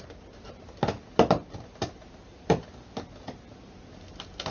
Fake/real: real